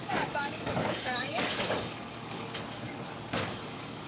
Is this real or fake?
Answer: fake